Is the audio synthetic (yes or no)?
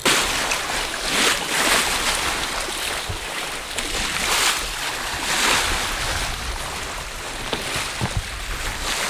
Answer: no